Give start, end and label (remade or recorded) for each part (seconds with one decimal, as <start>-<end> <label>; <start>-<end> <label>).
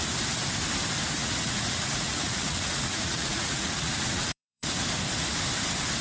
0.0-1.2 recorded; 1.2-4.8 remade; 4.8-6.0 recorded